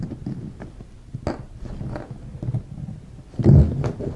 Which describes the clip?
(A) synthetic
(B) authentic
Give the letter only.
B